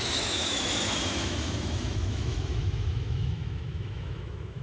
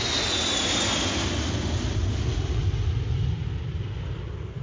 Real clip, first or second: second